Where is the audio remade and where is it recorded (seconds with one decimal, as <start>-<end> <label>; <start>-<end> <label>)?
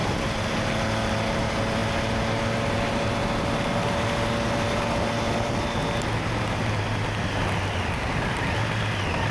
0.0-9.3 recorded